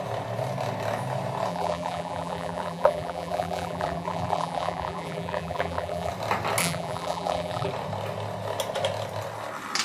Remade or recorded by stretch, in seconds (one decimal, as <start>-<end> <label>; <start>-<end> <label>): 0.0-1.5 recorded; 1.5-6.1 remade; 6.1-6.6 recorded; 6.6-7.7 remade; 7.7-9.8 recorded